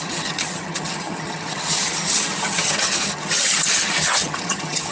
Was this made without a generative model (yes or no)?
no